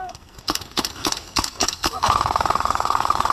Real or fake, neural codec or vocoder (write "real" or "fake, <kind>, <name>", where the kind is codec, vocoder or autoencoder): fake, codec, SNAC